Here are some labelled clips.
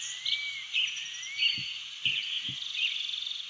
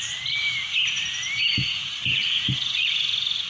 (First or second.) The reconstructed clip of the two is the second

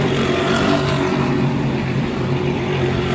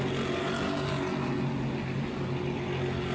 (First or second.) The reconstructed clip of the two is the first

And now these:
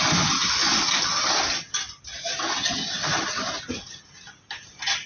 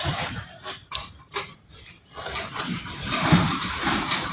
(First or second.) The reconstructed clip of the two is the second